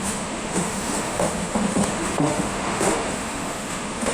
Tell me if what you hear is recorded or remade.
remade